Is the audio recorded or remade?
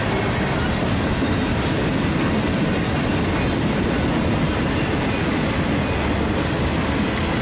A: recorded